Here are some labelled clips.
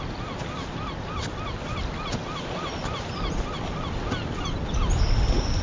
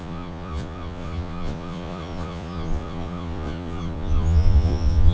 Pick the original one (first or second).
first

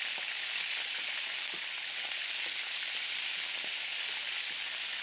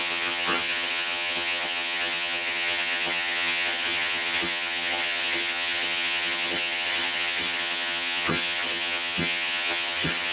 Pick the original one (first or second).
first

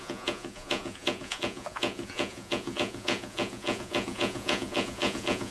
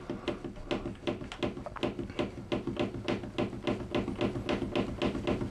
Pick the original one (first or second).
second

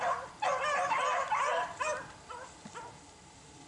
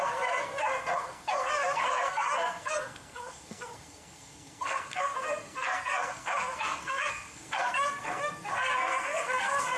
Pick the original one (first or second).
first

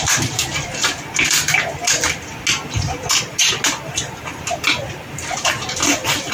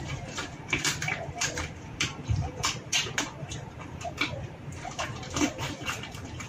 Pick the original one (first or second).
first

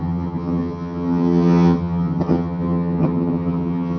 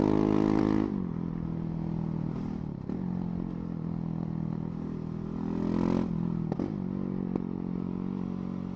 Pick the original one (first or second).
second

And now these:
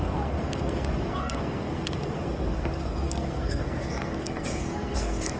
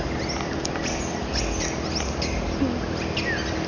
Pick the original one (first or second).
second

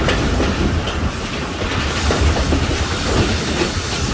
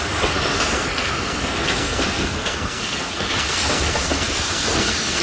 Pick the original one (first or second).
first